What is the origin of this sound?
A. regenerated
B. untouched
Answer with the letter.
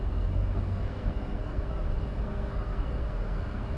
A